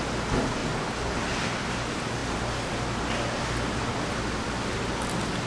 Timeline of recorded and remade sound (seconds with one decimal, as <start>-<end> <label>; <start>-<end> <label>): 0.0-5.5 recorded